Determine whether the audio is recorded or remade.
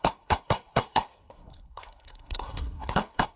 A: remade